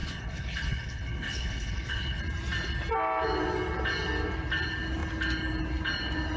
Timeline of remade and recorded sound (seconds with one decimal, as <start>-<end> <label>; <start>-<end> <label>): 0.0-2.2 remade; 2.2-6.4 recorded